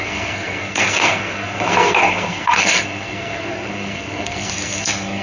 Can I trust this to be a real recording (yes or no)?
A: no